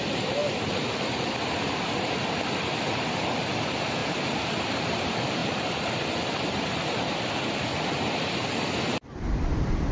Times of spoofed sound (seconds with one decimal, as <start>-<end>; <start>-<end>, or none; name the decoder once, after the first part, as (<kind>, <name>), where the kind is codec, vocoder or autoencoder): 0.0-0.4 (vocoder, BigVGAN v2); 1.5-4.0; 4.9-9.9

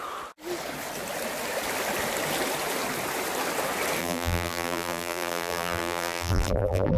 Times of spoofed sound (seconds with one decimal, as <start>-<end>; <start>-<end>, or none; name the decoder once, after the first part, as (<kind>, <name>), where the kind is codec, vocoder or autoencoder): 4.0-7.0 (vocoder, BigVGAN v2)

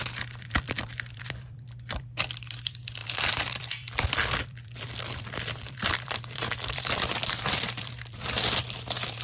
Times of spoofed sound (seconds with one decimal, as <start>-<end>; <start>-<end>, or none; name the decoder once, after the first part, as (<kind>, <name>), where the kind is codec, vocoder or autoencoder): 0.0-9.2 (vocoder, BigVGAN v2)

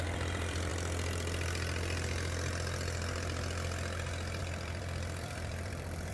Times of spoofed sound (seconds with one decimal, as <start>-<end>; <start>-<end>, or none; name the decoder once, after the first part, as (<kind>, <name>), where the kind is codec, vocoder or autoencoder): 0.0-0.7 (vocoder, BigVGAN v2); 4.4-6.1

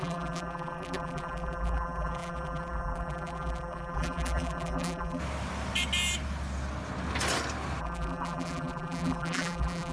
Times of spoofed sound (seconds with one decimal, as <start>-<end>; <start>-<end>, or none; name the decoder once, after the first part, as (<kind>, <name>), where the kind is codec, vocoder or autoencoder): 0.0-5.2 (vocoder, BigVGAN v2); 7.8-9.9

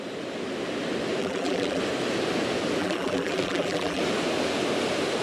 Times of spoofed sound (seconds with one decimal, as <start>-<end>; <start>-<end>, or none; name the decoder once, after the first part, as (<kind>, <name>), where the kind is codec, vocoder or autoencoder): 1.2-1.8 (vocoder, BigVGAN v2); 2.8-4.0